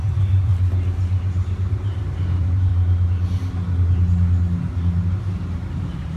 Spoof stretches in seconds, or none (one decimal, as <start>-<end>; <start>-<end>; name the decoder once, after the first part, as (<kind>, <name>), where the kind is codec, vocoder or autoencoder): 0.0-0.5 (vocoder, BigVGAN v2); 1.7-2.7; 5.1-6.2